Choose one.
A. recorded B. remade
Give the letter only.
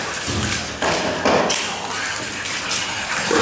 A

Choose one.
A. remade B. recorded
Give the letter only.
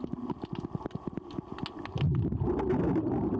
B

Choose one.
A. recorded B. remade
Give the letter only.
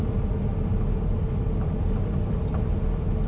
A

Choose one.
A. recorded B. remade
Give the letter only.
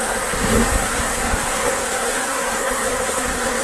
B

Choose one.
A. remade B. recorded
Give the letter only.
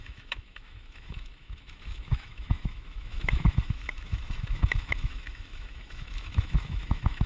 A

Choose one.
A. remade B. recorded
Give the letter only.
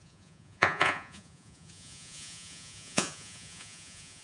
A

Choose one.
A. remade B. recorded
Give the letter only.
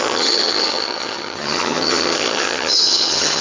A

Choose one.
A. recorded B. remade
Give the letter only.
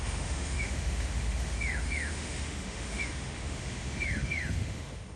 B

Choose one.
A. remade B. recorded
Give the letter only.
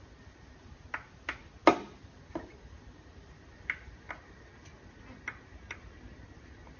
B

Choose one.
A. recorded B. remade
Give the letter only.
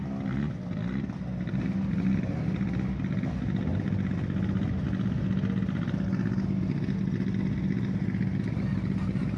A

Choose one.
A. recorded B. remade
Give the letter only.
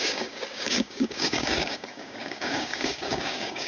B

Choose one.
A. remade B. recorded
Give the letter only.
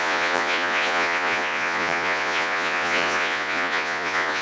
A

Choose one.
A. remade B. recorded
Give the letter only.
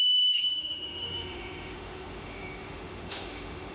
A